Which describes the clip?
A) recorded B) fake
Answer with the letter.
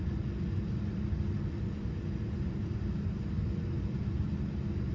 A